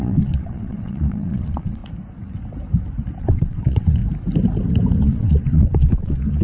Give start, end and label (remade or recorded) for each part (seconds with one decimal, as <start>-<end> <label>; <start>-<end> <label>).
0.0-1.8 remade; 1.8-3.2 recorded; 3.2-4.0 remade; 4.0-5.0 recorded; 5.0-6.4 remade

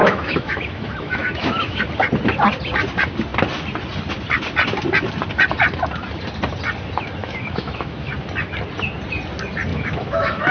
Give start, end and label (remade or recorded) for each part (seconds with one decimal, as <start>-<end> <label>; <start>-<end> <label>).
0.0-1.8 remade; 1.8-7.2 recorded; 7.2-8.1 remade; 8.1-9.7 recorded; 9.7-10.5 remade